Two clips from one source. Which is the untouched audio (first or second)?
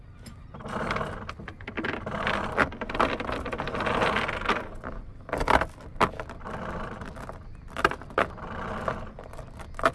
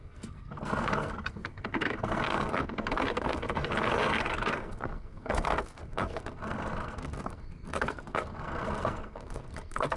first